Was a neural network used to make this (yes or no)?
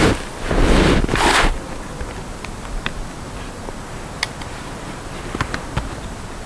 no